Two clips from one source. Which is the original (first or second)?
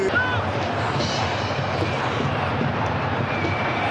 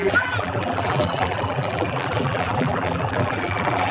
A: first